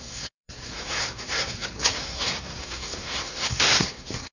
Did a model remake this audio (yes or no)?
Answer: yes